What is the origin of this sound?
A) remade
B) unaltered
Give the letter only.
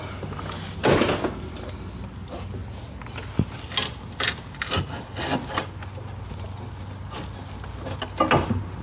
B